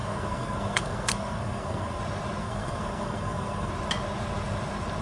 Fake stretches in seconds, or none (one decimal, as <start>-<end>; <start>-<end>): 0.0-2.0; 2.4-3.7